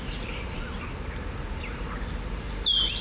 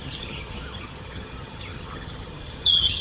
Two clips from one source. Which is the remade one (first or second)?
second